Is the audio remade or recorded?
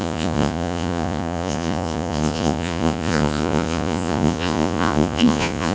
remade